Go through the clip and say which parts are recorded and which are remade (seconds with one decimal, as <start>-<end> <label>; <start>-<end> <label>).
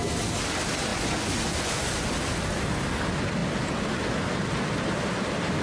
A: 0.0-0.9 recorded; 0.9-2.1 remade; 2.1-5.6 recorded